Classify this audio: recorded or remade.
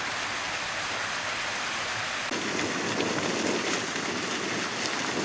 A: recorded